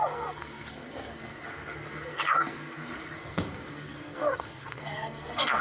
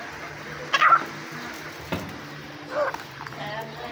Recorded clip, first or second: second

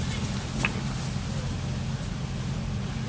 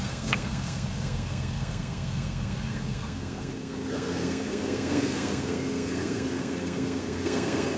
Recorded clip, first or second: first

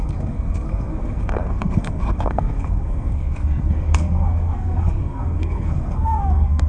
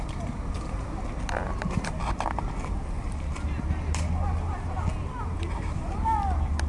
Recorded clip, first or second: second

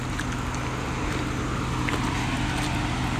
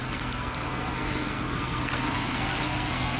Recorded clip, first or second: first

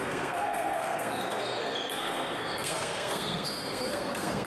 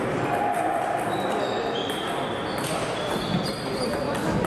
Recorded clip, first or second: second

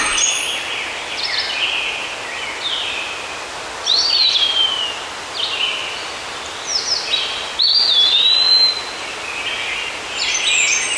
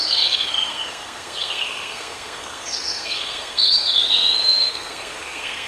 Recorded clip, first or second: first